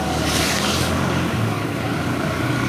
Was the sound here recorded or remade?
remade